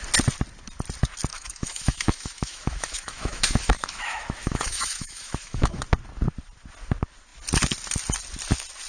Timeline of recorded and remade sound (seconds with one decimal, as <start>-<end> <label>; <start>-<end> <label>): 0.0-1.3 recorded; 1.3-5.8 remade; 5.8-8.9 recorded